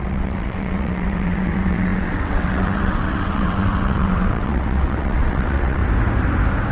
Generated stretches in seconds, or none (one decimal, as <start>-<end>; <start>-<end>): 0.0-5.8